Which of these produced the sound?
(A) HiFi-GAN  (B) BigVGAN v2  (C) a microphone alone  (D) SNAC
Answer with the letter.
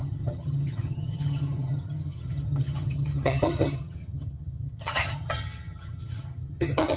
A